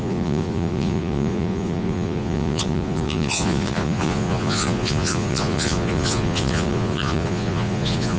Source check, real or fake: fake